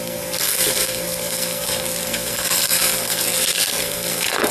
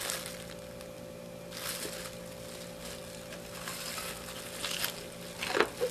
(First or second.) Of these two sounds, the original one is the second